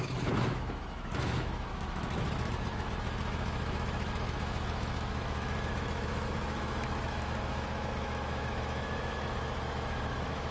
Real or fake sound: fake